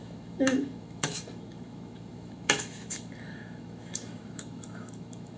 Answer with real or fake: fake